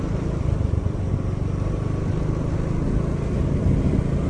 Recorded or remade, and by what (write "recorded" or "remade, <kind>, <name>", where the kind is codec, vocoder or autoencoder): recorded